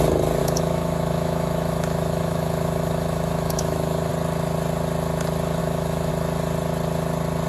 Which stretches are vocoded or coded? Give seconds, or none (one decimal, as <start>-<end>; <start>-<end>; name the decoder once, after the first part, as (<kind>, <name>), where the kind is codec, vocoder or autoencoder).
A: 0.4-4.1 (autoencoder, DAC-VAE); 5.6-6.1